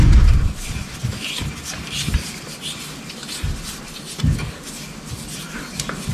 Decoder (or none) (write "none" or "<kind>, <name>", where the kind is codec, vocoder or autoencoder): none